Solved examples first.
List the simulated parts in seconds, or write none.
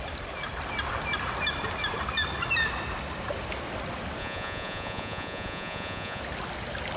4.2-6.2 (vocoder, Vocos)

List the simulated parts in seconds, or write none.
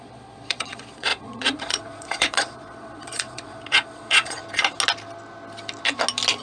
0.0-4.4 (vocoder, Vocos)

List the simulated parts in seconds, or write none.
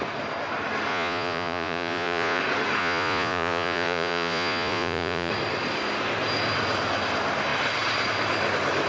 0.9-2.4 (vocoder, Vocos); 2.8-5.3